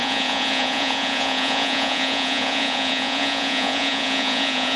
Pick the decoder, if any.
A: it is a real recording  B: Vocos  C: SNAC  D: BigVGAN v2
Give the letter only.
B